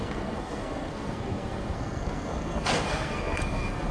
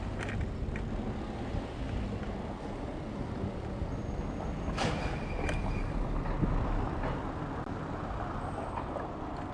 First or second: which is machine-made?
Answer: first